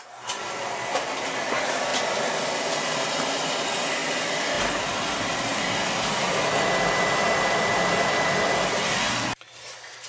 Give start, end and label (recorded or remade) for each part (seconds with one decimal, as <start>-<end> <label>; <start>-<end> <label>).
0.0-10.1 recorded